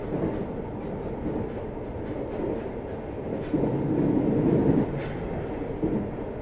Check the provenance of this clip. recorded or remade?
recorded